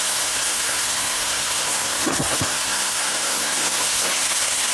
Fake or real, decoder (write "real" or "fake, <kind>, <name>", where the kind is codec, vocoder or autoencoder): fake, codec, SNAC